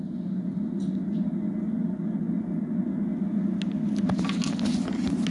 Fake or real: real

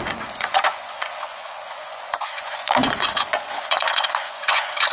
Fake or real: fake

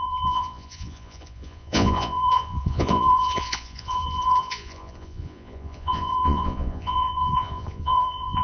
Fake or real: fake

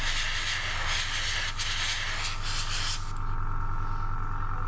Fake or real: real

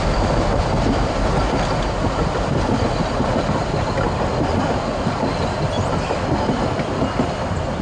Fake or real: real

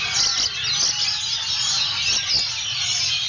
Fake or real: real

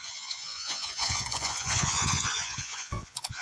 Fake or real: fake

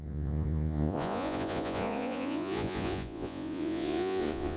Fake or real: fake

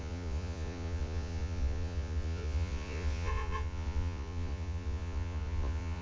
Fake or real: fake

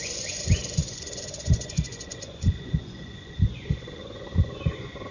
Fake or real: fake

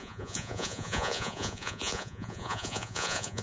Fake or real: fake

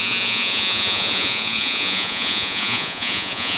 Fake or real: fake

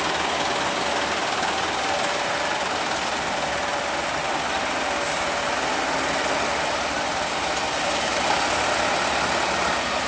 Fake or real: real